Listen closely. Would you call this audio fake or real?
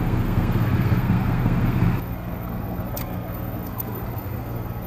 fake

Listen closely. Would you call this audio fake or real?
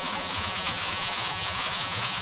fake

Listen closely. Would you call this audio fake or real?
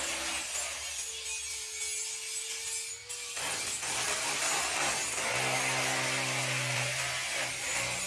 real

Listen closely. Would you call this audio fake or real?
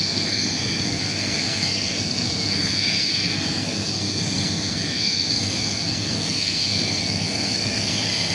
fake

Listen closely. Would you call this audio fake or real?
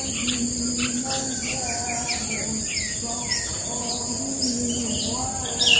real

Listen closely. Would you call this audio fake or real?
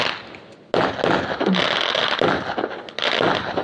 real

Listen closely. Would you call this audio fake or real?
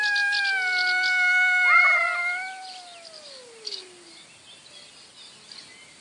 real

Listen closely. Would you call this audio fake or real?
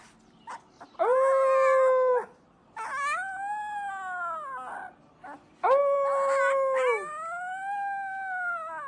real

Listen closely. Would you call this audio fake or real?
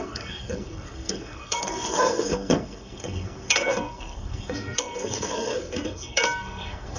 fake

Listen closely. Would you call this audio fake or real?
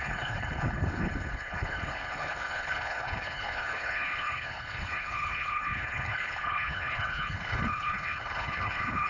fake